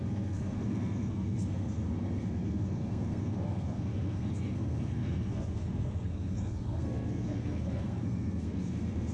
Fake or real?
fake